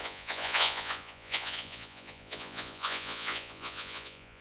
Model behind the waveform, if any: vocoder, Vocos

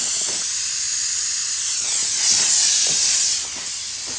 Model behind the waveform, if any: none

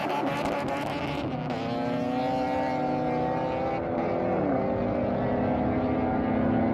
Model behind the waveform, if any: none